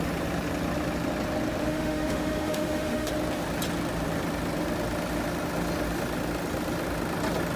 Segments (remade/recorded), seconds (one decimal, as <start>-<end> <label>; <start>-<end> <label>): 0.0-1.6 recorded; 1.6-3.1 remade; 3.1-7.6 recorded